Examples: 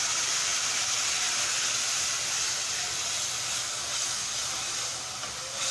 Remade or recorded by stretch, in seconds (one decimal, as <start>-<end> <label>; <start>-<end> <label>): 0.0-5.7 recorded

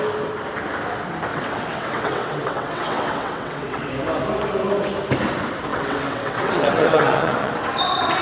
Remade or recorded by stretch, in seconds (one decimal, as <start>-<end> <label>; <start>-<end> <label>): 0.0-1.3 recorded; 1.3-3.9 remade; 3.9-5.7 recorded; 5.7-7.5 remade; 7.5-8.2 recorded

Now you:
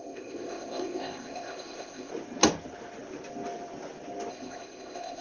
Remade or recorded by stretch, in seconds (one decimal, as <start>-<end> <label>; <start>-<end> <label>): 0.0-2.1 remade; 2.1-4.3 recorded; 4.3-5.2 remade

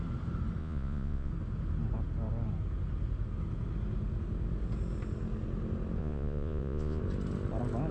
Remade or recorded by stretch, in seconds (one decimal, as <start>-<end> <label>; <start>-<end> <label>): 0.0-0.6 recorded; 0.6-1.3 remade; 1.3-6.0 recorded; 6.0-7.0 remade; 7.0-7.9 recorded